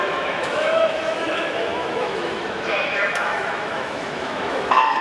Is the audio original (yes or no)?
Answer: no